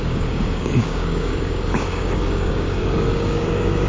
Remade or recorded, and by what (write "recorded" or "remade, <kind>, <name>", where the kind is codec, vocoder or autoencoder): remade, codec, DAC